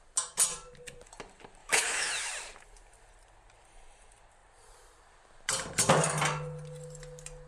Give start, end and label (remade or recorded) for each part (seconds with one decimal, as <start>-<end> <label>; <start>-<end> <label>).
0.0-1.6 recorded; 1.6-2.3 remade; 2.3-7.5 recorded